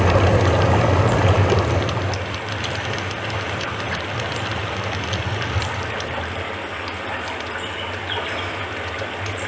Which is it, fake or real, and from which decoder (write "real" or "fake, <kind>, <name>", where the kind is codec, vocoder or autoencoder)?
real